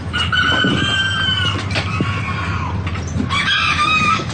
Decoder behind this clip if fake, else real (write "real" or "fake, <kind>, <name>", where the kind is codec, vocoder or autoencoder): real